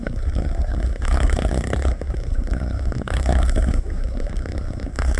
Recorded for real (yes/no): no